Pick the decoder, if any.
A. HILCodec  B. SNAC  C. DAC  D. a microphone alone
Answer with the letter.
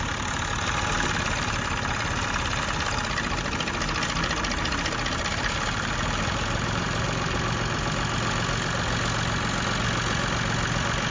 D